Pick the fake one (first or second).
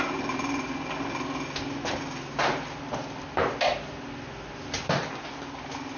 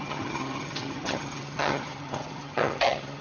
second